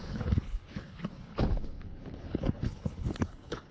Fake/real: fake